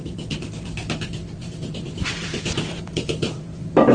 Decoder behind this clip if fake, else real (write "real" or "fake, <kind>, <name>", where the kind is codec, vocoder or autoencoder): real